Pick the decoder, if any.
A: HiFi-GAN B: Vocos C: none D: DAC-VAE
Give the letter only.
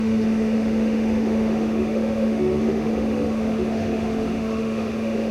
D